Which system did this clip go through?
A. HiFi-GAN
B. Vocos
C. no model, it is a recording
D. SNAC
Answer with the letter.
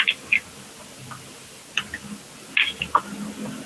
C